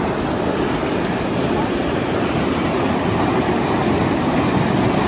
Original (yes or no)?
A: yes